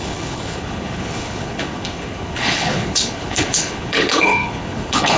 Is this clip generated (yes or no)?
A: yes